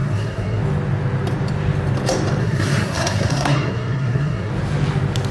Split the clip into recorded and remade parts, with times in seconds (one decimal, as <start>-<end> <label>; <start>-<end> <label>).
0.0-0.6 remade; 0.6-2.4 recorded; 2.4-4.5 remade; 4.5-5.3 recorded